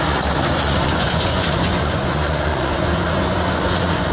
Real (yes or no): no